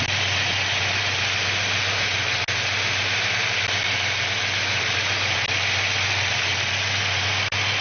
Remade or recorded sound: recorded